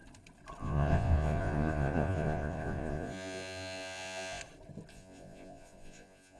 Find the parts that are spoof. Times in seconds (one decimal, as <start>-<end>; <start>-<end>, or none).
0.6-4.4; 4.9-6.4